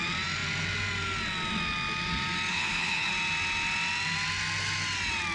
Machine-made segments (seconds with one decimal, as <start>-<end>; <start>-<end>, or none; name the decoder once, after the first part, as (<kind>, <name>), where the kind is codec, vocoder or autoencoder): 2.5-3.1 (codec, HILCodec)